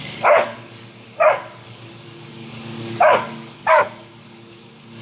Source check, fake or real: fake